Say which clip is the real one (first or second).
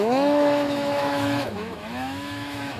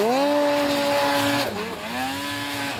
second